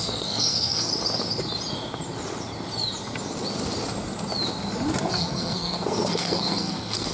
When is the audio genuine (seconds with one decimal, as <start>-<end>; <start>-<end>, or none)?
0.9-5.1